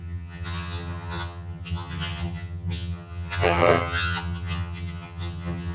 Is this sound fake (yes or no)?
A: yes